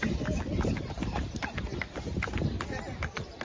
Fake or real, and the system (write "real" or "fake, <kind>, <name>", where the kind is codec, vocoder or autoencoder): real